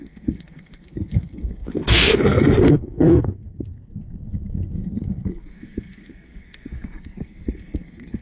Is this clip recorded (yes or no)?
no